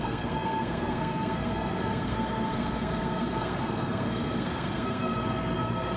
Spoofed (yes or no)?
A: yes